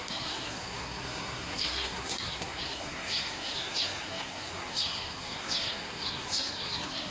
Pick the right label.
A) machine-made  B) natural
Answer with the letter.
A